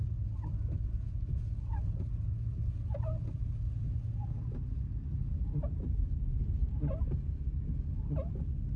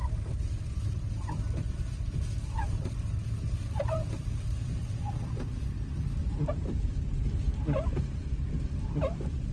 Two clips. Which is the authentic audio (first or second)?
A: first